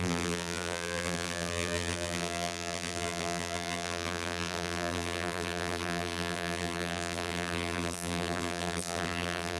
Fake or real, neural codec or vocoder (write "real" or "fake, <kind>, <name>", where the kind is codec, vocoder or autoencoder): fake, vocoder, BigVGAN v2